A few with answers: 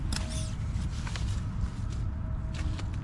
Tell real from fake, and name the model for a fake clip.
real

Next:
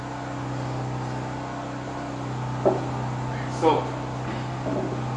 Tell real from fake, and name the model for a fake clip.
real